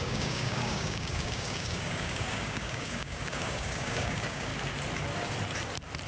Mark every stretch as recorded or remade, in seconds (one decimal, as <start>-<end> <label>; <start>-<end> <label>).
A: 0.0-4.5 remade; 4.5-6.1 recorded